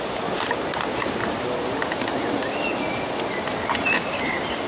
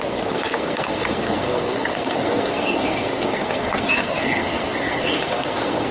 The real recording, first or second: first